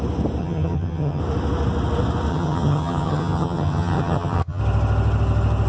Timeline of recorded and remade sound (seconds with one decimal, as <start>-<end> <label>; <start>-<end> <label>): 0.0-0.4 recorded; 0.4-1.2 remade; 1.2-2.3 recorded; 2.3-4.6 remade; 4.6-5.7 recorded